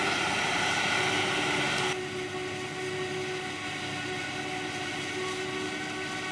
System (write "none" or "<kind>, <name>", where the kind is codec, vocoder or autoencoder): none